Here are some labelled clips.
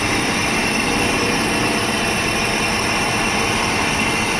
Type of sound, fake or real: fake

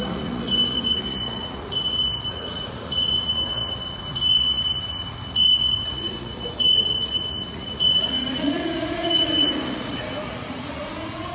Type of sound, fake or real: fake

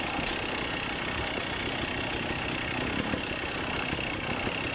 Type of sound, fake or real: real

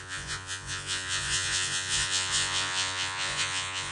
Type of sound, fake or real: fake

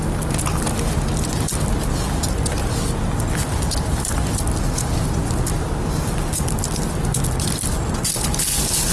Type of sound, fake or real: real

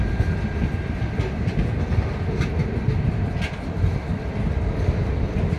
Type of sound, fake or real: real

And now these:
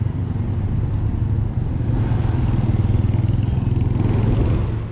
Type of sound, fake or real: real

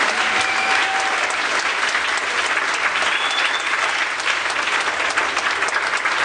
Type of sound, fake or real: real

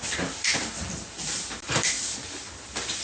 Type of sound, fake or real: fake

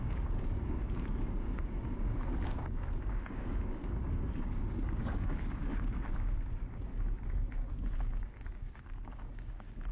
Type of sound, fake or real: fake